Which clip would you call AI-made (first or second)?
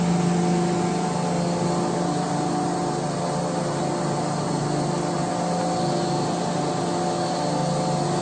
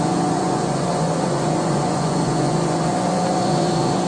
second